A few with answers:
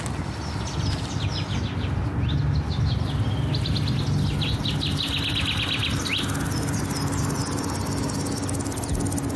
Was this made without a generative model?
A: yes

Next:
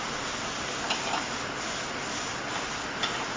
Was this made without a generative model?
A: no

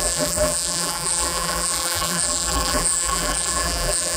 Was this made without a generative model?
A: no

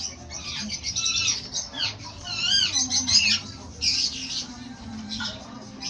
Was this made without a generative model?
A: no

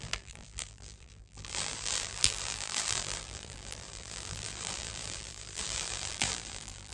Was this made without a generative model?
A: no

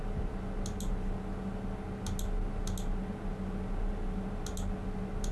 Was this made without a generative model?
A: yes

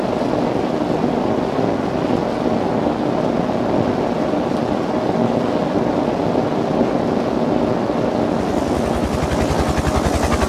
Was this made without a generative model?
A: yes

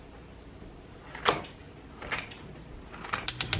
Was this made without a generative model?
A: yes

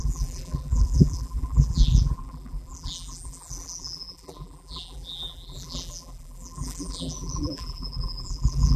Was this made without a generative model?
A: no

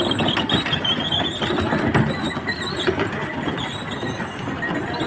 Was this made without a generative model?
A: no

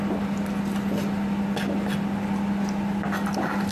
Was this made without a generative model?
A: yes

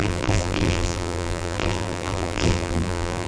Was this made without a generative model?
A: no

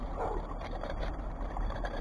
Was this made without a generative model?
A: no